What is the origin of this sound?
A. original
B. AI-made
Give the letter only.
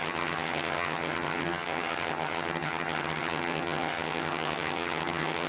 B